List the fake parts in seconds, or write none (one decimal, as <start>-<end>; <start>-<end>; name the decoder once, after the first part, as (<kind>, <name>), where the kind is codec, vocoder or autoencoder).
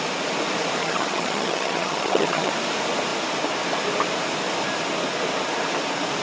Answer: 0.8-2.5 (vocoder, HiFi-GAN)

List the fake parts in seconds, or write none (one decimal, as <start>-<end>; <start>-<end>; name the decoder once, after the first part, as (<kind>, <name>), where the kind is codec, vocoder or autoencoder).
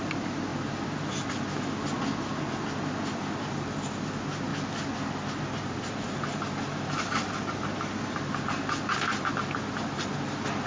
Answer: none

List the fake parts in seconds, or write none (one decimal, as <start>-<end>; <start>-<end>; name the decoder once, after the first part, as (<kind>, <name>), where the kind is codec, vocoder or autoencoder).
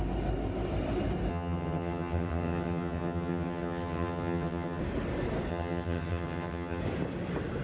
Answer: 1.3-4.8 (vocoder, HiFi-GAN); 5.5-6.8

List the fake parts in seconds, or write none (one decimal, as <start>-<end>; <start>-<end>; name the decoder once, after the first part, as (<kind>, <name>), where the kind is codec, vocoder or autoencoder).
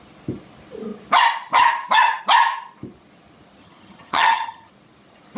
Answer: 3.6-4.7 (vocoder, HiFi-GAN)